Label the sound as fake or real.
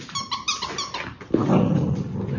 real